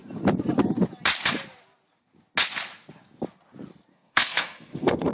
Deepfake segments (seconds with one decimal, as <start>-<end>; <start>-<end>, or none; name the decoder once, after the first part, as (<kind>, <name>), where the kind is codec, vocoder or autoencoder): 3.9-5.1 (codec, SNAC)